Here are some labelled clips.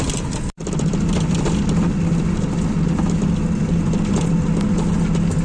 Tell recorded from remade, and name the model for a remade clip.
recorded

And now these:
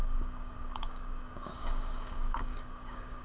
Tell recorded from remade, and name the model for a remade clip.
remade, codec, DAC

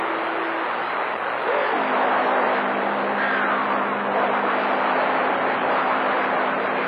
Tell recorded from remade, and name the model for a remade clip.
recorded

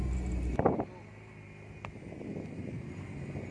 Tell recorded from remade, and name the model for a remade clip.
recorded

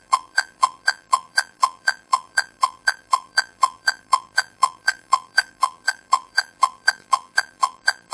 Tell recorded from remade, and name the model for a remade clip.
remade, vocoder, BigVGAN v2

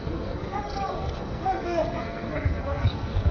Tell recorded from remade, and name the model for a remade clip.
remade, codec, SNAC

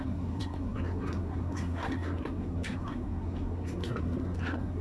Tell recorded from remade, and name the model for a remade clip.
remade, codec, SNAC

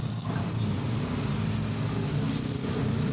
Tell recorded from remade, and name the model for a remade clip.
recorded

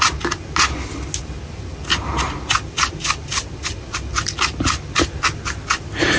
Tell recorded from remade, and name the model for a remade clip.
recorded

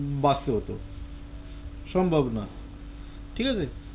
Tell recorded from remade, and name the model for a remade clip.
recorded